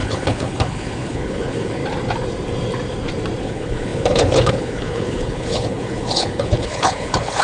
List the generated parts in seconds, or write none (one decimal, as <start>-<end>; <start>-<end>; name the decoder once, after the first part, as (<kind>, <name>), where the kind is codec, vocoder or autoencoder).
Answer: 0.0-1.8 (codec, HILCodec); 3.4-7.4